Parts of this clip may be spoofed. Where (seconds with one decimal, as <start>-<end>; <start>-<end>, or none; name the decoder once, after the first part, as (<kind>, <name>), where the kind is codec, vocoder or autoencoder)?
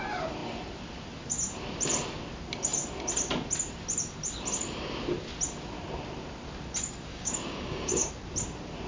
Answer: 7.1-8.1 (codec, DAC)